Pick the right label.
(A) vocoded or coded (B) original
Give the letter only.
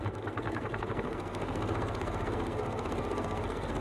A